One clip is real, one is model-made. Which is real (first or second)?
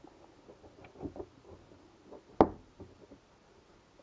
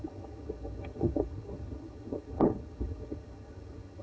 first